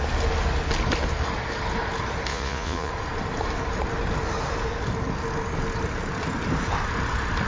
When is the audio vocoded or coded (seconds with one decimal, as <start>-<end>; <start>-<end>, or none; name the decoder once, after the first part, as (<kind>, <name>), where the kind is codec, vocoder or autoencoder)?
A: 2.3-2.9 (vocoder, Vocos)